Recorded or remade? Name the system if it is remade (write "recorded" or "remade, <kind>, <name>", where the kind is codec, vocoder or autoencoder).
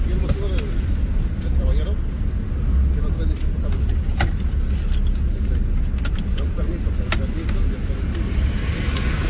recorded